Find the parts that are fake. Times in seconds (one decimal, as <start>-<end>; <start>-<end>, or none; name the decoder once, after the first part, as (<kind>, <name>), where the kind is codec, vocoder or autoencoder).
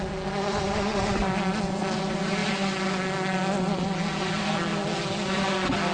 none